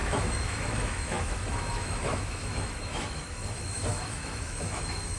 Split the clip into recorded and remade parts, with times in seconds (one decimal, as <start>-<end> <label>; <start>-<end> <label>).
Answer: 0.0-5.2 remade